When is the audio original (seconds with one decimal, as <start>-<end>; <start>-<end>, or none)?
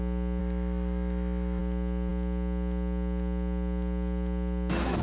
0.0-0.4; 1.6-5.0